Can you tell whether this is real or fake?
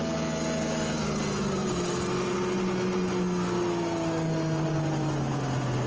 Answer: real